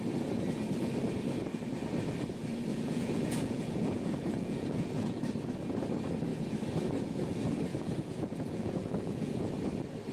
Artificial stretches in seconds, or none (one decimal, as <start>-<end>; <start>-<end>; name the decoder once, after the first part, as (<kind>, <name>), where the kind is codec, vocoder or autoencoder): 2.7-5.2 (vocoder, Vocos); 7.7-9.5